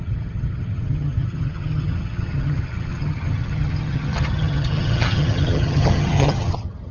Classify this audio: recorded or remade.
remade